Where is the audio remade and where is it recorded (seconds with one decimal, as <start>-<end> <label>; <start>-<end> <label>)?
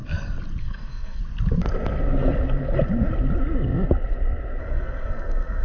0.0-0.6 recorded; 0.6-1.2 remade; 1.2-4.6 recorded; 4.6-5.6 remade